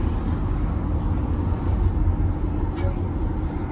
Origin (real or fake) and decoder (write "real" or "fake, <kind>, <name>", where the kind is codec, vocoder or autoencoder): real